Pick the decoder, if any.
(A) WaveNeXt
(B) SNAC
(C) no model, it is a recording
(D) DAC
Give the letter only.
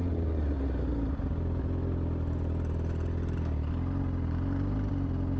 C